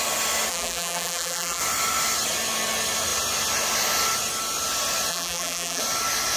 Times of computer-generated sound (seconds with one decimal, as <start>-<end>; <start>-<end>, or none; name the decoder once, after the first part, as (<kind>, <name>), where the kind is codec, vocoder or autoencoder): 0.5-1.6 (vocoder, BigVGAN v2); 5.1-5.8